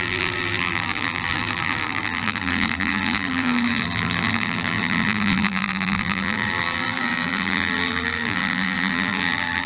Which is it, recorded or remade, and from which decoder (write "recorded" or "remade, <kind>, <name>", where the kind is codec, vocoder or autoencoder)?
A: remade, vocoder, BigVGAN v2